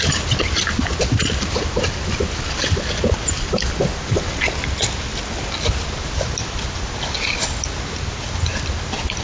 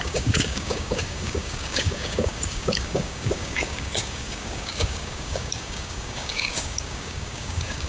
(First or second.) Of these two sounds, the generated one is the second